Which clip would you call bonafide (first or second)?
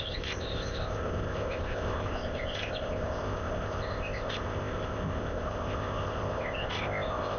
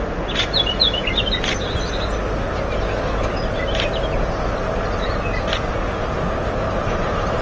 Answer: second